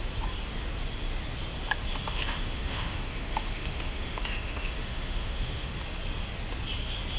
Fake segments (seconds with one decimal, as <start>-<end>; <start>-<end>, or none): 1.9-5.7